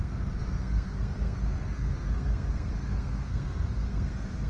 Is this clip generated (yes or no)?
yes